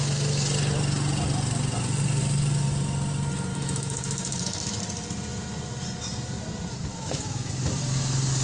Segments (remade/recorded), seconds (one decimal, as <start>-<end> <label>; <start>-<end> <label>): 0.0-3.5 recorded; 3.5-4.8 remade; 4.8-6.9 recorded; 6.9-7.5 remade; 7.5-8.4 recorded